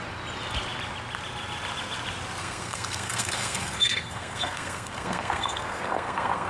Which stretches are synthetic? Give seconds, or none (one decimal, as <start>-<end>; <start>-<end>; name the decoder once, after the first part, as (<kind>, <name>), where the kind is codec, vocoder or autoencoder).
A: 2.4-6.5 (codec, SNAC)